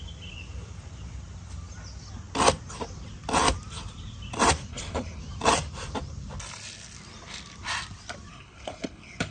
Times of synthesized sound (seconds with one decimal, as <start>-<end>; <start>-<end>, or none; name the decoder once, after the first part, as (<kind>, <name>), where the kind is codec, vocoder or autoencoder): 4.7-5.2 (codec, HILCodec); 8.3-9.3